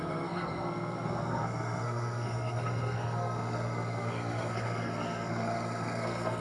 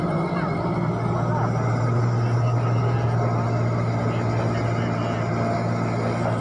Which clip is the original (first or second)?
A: second